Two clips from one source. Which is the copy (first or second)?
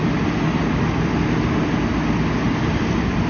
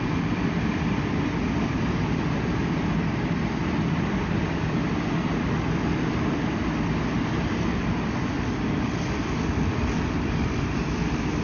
second